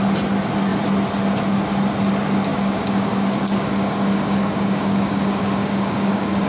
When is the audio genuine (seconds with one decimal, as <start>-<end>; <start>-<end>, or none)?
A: 0.0-2.5